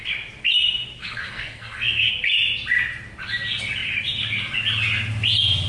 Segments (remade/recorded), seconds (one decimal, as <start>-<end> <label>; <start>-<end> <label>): 0.0-1.0 recorded; 1.0-2.1 remade; 2.1-5.7 recorded